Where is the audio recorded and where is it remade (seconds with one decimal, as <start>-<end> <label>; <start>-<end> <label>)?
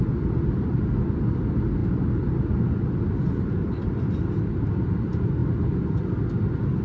0.0-6.8 remade